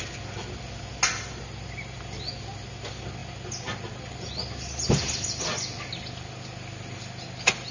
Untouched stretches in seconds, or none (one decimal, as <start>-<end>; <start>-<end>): 0.0-7.7